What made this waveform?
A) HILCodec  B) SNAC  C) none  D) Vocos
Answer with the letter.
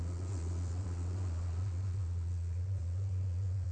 D